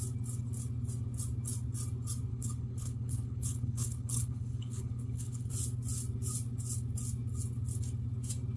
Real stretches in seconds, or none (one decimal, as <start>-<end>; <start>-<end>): 0.0-2.3; 5.5-8.6